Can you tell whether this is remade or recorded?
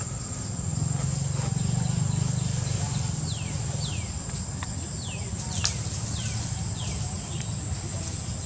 recorded